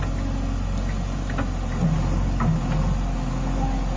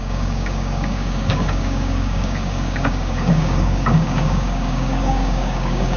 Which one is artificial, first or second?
second